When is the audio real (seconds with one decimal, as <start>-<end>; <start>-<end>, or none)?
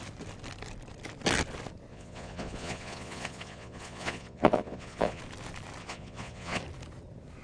0.0-1.9; 5.2-5.8; 6.6-7.4